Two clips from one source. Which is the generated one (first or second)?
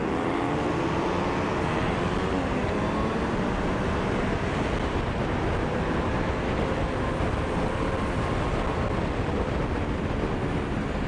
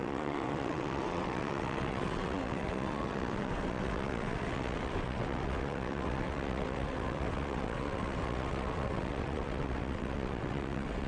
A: second